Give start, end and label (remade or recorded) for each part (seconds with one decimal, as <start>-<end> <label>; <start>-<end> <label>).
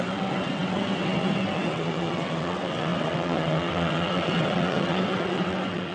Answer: 0.0-5.9 remade